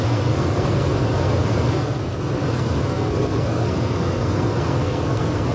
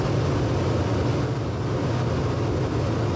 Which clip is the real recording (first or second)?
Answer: second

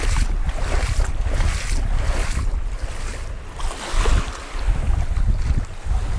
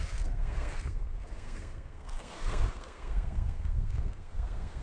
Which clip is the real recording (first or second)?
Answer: first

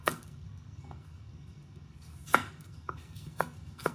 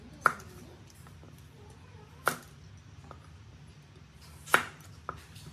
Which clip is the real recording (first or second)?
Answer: second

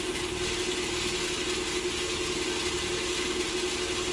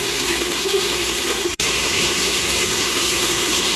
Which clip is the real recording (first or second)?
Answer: first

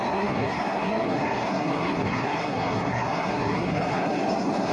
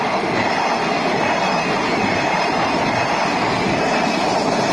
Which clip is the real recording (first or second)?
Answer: second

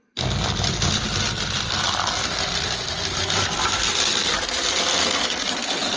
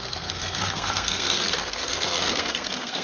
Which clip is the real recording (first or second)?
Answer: first